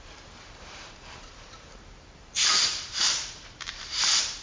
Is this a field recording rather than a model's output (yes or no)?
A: no